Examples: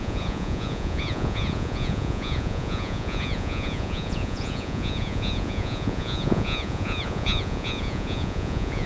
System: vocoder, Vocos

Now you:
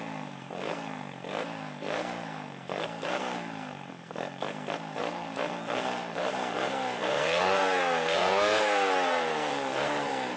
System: codec, SNAC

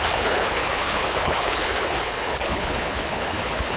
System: codec, HILCodec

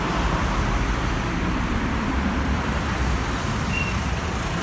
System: none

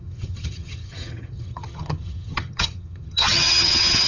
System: vocoder, HiFi-GAN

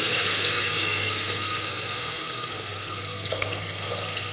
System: codec, SNAC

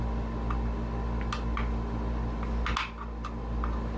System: none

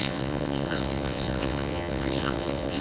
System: vocoder, WaveNeXt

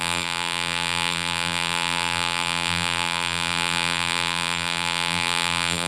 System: vocoder, BigVGAN v2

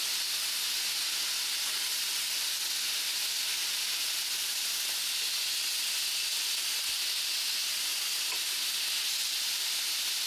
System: none